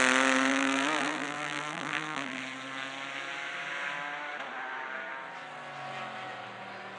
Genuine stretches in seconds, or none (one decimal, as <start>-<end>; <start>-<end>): 0.0-0.5; 2.4-7.0